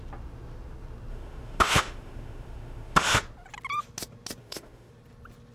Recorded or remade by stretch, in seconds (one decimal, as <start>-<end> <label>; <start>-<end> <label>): 0.0-1.1 recorded; 1.1-3.2 remade; 3.2-4.4 recorded; 4.4-4.9 remade; 4.9-5.5 recorded